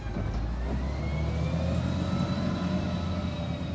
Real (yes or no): yes